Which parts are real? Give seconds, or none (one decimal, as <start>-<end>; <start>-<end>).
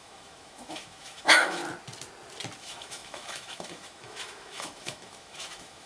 1.6-2.6